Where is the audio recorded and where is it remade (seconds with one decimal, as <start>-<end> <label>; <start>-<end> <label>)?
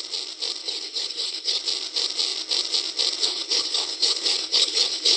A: 0.0-0.6 recorded; 0.6-1.6 remade; 1.6-3.2 recorded; 3.2-5.2 remade